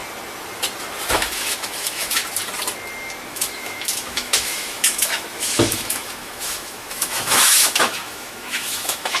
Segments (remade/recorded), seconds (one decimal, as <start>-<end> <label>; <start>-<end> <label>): 0.0-1.1 recorded; 1.1-2.2 remade; 2.2-3.3 recorded; 3.3-9.2 remade